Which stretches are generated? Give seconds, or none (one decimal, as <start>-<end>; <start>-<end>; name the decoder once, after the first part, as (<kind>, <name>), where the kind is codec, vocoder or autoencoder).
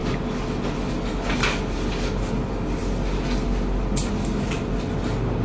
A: none